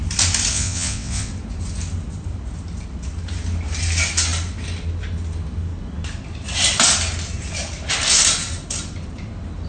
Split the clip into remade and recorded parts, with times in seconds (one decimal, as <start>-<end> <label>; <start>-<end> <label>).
0.0-0.5 recorded; 0.5-1.3 remade; 1.3-9.7 recorded